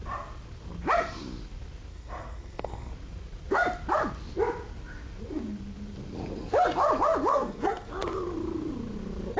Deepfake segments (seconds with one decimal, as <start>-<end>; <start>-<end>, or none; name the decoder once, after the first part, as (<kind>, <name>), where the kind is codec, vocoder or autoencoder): 1.9-2.9 (codec, SNAC); 7.3-7.9